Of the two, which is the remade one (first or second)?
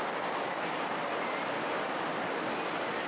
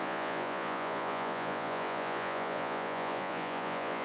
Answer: second